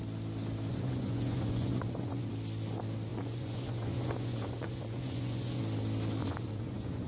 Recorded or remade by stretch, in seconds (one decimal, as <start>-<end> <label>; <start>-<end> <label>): 0.0-0.7 recorded; 0.7-2.3 remade; 2.3-3.1 recorded; 3.1-5.6 remade; 5.6-6.2 recorded; 6.2-7.1 remade

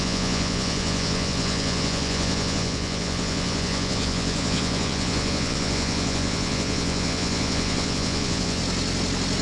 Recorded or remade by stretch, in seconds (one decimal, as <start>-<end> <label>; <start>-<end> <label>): 0.0-8.6 remade; 8.6-9.4 recorded

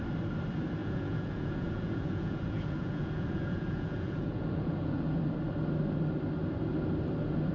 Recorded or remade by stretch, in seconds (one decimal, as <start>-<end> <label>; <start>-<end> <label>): 0.0-0.8 recorded; 0.8-5.2 remade; 5.2-7.5 recorded

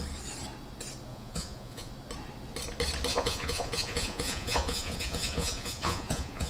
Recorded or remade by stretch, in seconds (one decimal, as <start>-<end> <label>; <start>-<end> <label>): 0.0-1.1 recorded; 1.1-1.9 remade; 1.9-3.1 recorded; 3.1-6.5 remade